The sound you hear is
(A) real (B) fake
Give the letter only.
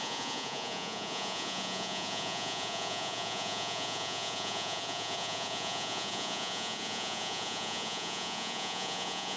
B